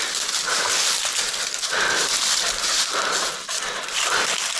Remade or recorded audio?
recorded